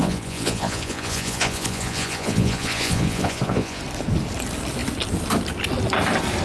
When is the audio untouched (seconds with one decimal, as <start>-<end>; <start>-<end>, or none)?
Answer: 3.8-6.4